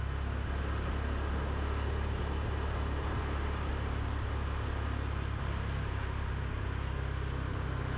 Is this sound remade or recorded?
recorded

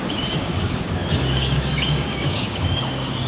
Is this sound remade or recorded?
remade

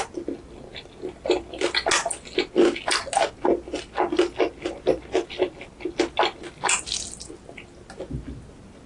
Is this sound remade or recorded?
recorded